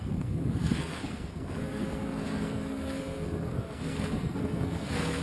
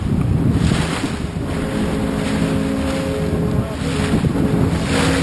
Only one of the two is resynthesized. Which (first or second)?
first